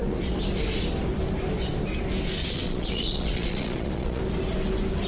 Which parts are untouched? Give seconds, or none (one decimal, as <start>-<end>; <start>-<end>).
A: 0.0-2.4; 4.2-5.1